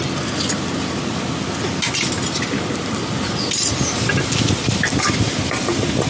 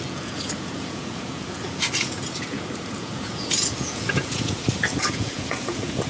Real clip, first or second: first